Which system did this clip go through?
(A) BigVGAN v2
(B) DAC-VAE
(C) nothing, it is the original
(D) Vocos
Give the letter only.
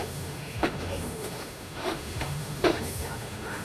B